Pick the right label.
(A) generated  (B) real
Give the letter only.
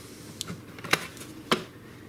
B